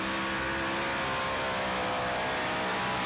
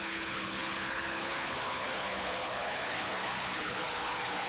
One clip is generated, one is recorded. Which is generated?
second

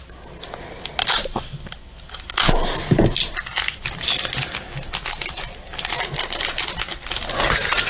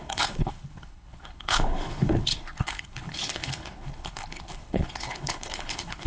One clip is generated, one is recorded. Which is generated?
second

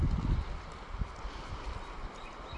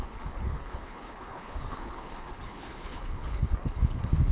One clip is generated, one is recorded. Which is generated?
second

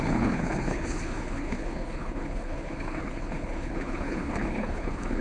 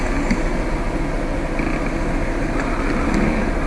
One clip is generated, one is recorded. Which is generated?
first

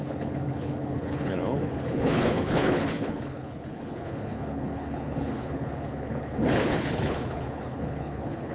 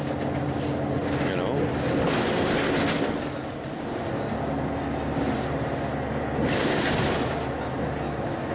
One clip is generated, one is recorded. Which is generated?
first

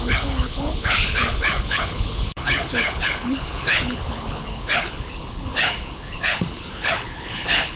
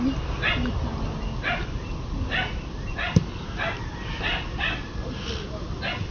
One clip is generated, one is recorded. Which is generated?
first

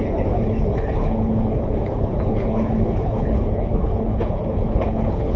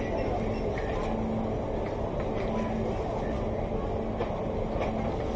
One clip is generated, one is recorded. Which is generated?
first